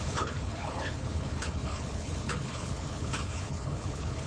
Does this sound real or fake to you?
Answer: fake